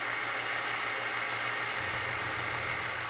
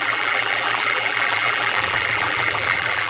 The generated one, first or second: second